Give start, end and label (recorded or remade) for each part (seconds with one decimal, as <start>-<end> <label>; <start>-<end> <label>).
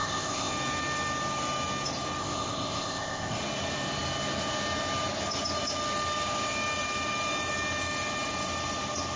0.0-0.5 remade; 0.5-2.2 recorded; 2.2-3.4 remade; 3.4-9.2 recorded